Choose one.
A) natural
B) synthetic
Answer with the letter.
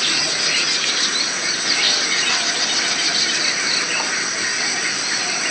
A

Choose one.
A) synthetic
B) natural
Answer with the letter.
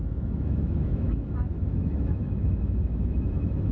A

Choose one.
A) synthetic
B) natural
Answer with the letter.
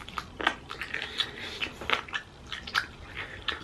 B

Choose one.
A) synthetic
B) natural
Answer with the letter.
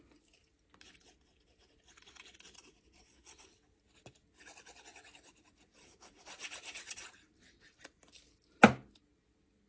B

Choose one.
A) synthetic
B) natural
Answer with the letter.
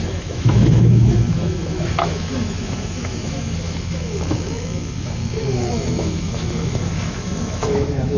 A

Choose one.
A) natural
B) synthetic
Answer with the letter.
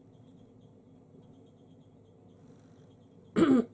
A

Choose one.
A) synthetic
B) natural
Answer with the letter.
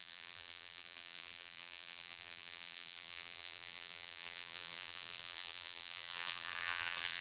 A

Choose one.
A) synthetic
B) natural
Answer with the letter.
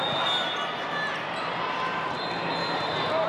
B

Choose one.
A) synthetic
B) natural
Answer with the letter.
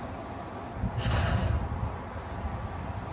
B